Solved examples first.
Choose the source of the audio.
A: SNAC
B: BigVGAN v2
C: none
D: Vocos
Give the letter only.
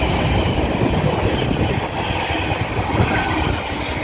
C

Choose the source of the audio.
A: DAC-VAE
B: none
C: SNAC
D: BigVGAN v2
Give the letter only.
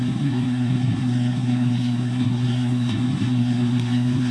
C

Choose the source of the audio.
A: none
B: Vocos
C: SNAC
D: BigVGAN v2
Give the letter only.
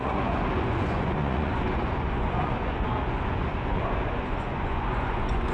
B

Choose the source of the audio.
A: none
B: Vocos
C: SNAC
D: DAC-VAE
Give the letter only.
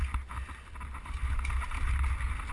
A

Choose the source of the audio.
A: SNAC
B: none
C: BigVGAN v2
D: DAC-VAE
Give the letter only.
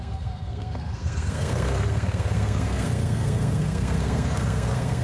A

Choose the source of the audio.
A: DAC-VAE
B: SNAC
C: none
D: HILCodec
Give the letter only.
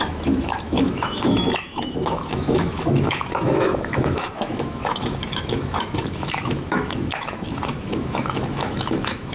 A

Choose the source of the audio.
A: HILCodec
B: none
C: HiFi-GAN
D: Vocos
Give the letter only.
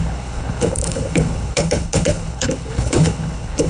A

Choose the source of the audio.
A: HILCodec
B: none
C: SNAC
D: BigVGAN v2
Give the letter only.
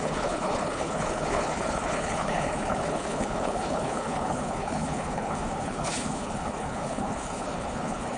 A